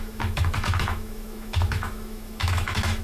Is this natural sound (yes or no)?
no